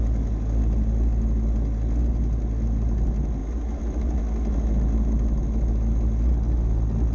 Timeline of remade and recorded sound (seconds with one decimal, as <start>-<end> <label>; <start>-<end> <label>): 0.0-3.4 recorded; 3.4-4.2 remade; 4.2-7.1 recorded